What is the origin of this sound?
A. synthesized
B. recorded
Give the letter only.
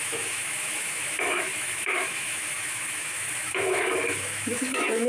A